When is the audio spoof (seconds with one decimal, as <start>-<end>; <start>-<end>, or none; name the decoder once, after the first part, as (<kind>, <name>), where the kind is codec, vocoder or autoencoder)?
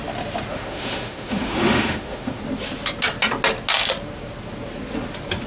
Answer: 0.5-2.4 (autoencoder, DAC-VAE)